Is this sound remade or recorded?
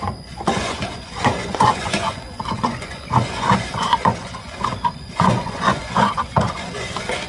remade